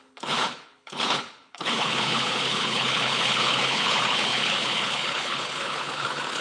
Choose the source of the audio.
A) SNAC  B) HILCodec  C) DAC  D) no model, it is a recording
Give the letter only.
B